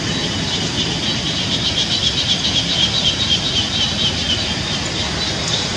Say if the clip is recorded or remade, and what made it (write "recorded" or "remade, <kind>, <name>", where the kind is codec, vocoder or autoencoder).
recorded